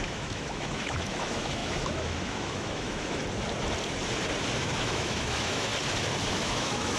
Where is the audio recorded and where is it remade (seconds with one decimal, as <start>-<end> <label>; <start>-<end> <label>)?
0.0-3.2 remade; 3.2-4.6 recorded; 4.6-5.7 remade; 5.7-6.3 recorded; 6.3-7.0 remade